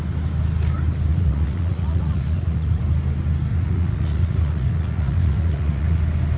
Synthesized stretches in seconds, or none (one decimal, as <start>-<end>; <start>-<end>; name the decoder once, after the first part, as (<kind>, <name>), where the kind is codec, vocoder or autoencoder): 1.1-2.8 (vocoder, Vocos); 3.5-6.0